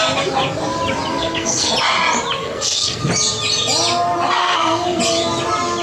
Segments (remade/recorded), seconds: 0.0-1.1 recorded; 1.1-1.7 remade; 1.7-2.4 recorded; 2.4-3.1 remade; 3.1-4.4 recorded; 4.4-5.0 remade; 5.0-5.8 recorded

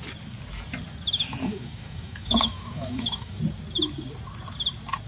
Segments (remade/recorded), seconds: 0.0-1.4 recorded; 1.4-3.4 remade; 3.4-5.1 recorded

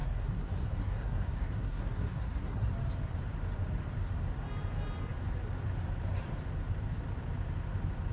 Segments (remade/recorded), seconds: 0.0-2.7 remade; 2.7-8.1 recorded